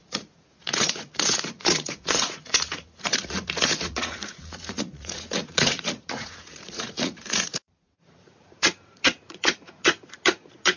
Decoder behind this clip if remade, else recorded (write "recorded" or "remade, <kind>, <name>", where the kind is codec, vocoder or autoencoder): remade, vocoder, Vocos